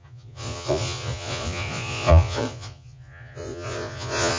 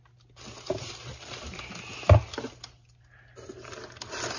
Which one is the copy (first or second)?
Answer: first